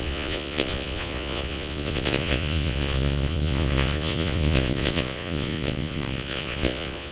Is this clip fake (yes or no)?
yes